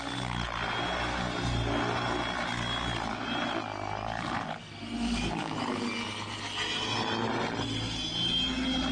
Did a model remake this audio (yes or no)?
no